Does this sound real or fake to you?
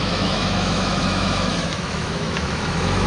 fake